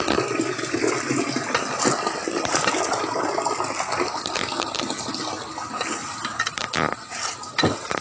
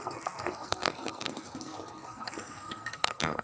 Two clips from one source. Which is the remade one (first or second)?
second